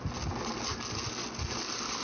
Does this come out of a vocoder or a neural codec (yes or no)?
no